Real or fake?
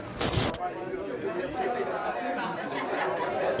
real